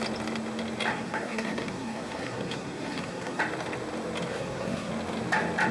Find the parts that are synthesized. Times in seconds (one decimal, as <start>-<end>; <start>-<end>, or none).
0.9-3.4; 4.3-4.9